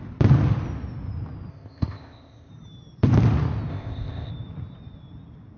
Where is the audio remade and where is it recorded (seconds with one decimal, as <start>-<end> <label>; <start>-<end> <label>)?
0.0-1.5 recorded; 1.5-2.5 remade; 2.5-3.7 recorded; 3.7-4.3 remade; 4.3-5.6 recorded